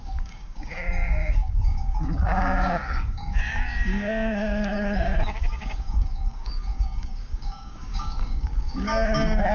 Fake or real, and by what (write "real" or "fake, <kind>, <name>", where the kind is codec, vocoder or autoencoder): fake, codec, DAC